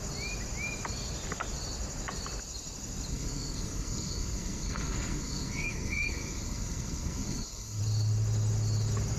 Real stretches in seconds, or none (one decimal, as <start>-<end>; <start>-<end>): 0.0-3.1; 7.8-9.2